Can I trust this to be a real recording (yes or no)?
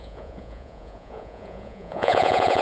no